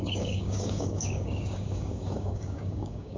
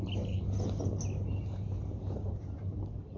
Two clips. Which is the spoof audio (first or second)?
first